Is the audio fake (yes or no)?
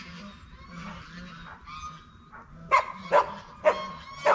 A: no